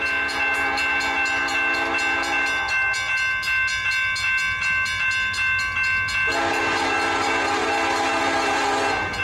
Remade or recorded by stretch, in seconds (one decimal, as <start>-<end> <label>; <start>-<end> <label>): 0.0-9.2 recorded